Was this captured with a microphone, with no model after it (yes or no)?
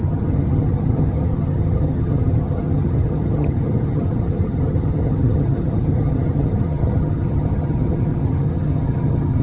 no